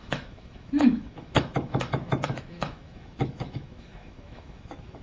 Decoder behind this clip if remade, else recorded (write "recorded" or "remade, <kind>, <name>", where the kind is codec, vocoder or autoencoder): remade, autoencoder, DAC-VAE